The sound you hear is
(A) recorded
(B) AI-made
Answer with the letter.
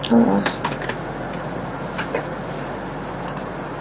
A